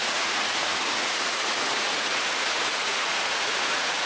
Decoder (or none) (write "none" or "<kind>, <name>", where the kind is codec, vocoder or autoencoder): vocoder, Vocos